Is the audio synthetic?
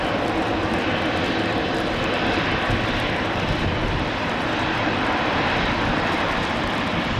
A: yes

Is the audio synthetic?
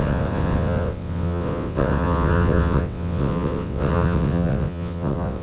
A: yes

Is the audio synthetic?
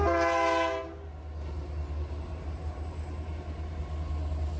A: no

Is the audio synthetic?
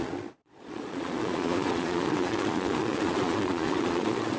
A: yes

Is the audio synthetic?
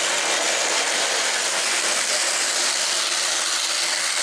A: no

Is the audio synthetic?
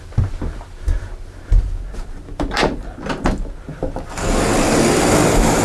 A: no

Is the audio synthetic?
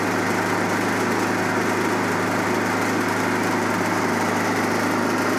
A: no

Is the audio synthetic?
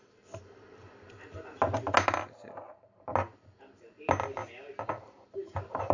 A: no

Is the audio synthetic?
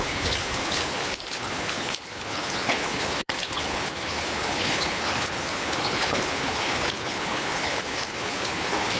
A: yes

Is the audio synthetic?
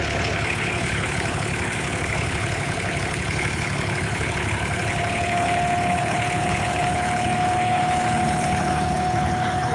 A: yes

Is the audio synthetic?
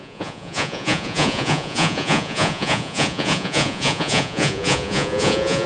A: yes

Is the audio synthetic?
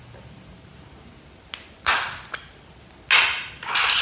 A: no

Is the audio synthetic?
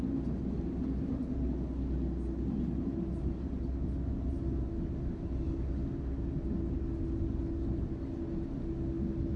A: no